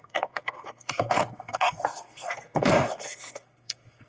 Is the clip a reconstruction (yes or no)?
yes